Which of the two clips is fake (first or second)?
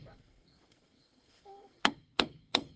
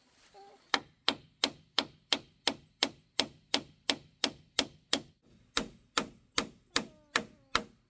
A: first